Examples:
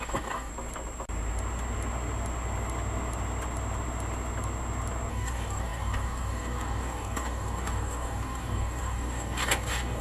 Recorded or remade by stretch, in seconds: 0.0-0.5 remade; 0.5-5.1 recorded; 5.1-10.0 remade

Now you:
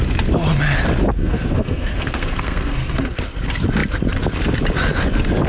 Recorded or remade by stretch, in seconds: 0.0-1.2 recorded; 1.2-3.2 remade; 3.2-5.5 recorded

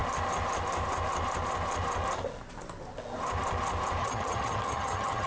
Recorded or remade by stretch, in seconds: 0.0-4.0 recorded; 4.0-5.3 remade

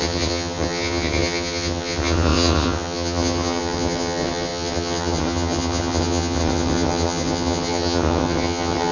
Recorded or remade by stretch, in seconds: 0.0-8.9 remade